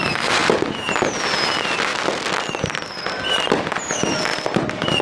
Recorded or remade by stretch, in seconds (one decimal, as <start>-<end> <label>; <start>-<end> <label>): 0.0-1.9 recorded; 1.9-2.6 remade; 2.6-4.3 recorded; 4.3-5.0 remade